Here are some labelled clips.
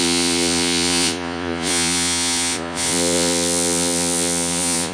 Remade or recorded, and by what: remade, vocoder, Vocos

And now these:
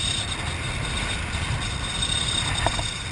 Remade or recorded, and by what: recorded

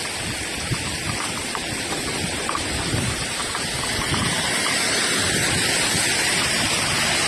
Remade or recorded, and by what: remade, vocoder, BigVGAN v2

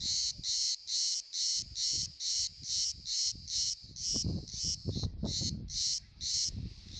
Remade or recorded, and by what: remade, vocoder, BigVGAN v2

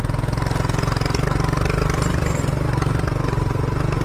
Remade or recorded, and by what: recorded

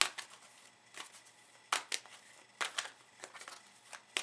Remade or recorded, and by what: recorded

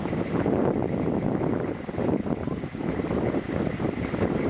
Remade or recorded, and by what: recorded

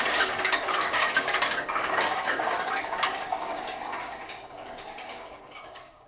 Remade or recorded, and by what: remade, codec, DAC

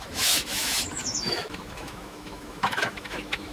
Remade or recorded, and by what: remade, autoencoder, DAC-VAE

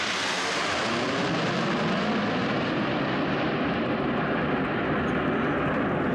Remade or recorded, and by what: recorded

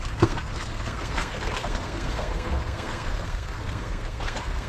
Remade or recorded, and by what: remade, codec, SNAC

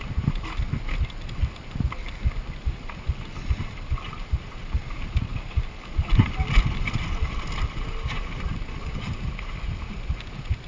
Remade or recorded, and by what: recorded